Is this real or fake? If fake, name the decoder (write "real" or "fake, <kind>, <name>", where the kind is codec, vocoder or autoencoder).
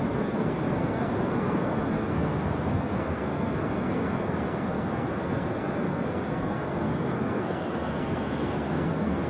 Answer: fake, codec, SNAC